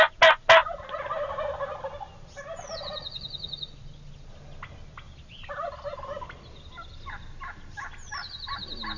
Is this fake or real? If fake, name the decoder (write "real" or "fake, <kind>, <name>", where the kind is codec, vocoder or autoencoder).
real